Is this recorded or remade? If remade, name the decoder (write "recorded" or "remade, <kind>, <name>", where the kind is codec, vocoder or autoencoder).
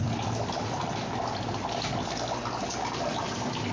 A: recorded